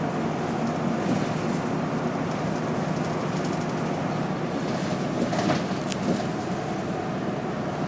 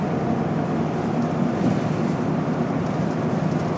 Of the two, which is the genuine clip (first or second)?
first